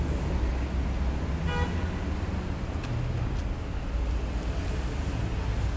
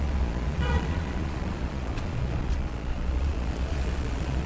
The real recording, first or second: first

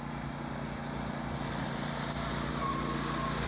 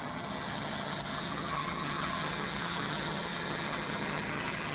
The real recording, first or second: first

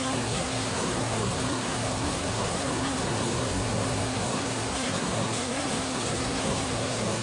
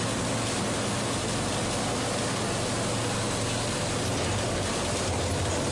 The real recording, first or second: second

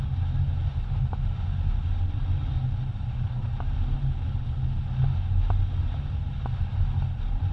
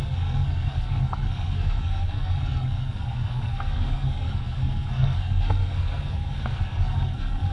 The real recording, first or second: first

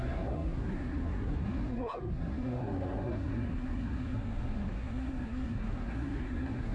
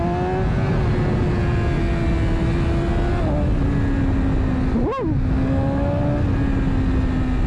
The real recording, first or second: second